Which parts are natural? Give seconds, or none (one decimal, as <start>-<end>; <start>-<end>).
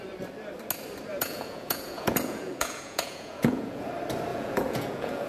0.0-1.1; 3.9-4.3